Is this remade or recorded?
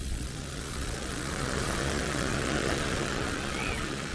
remade